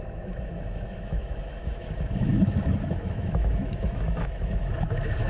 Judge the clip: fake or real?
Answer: fake